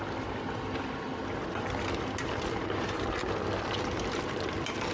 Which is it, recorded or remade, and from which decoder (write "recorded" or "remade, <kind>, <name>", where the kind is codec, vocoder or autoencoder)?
recorded